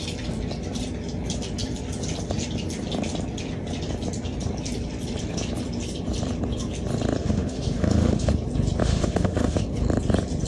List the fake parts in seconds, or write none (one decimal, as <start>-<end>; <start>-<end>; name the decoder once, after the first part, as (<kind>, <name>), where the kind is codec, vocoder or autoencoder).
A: 7.2-8.3 (autoencoder, DAC-VAE); 8.8-9.6